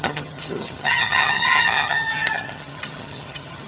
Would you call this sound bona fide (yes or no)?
no